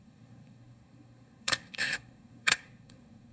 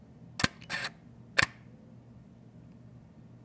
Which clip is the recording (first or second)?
second